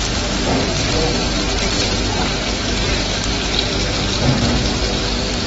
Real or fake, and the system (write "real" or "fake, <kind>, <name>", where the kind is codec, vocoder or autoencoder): real